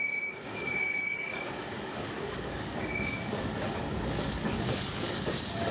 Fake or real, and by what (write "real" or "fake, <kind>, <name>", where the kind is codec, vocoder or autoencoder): fake, codec, DAC